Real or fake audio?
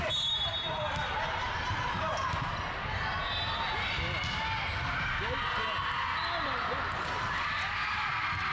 real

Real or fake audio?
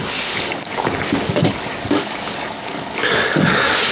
fake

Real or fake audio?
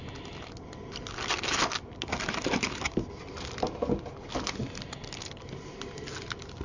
real